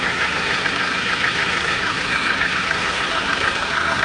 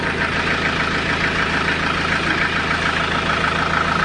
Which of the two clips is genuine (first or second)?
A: second